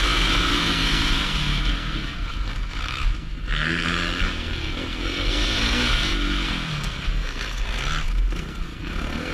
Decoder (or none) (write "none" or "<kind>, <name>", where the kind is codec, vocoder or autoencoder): codec, SNAC